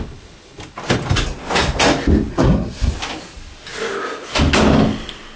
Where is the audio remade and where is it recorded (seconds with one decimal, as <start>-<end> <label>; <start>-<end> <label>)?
0.0-2.3 recorded; 2.3-2.9 remade; 2.9-5.4 recorded